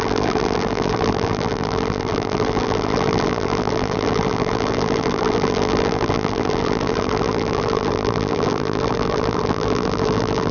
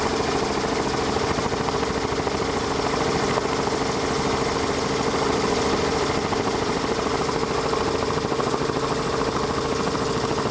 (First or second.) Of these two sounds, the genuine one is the second